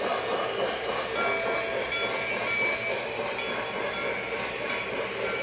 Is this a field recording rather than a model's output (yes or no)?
yes